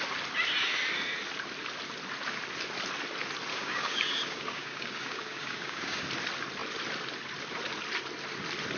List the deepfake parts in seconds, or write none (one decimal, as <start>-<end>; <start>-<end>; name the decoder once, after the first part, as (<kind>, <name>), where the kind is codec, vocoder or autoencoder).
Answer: 3.5-6.1 (codec, DAC)